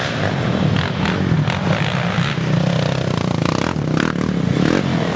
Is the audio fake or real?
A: real